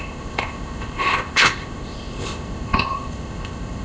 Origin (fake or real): fake